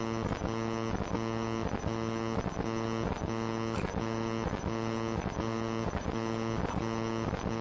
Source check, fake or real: real